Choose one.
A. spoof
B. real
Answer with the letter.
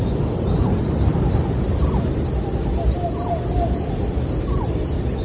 B